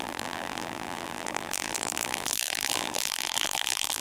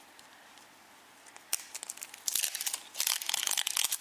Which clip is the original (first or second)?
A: second